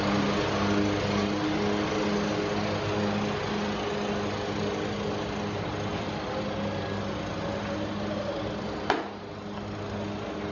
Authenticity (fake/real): real